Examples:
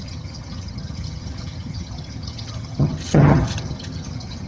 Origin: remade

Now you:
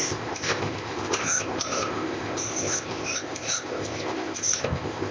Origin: remade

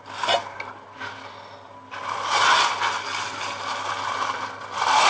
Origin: recorded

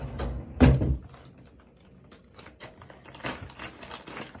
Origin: recorded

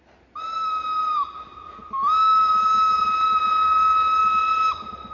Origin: recorded